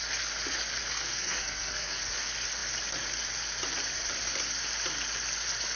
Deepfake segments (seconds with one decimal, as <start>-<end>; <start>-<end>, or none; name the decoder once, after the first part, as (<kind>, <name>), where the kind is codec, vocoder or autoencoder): 0.8-2.0 (codec, SNAC)